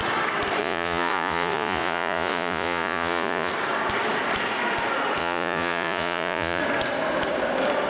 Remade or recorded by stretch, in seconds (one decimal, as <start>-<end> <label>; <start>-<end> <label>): 0.0-0.6 recorded; 0.6-3.5 remade; 3.5-5.2 recorded; 5.2-6.6 remade; 6.6-7.9 recorded